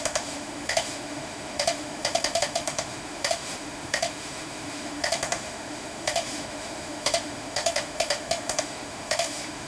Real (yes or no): no